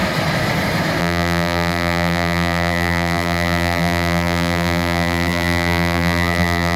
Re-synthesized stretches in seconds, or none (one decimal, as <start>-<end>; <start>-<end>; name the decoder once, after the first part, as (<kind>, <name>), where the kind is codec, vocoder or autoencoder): 1.0-6.8 (vocoder, BigVGAN v2)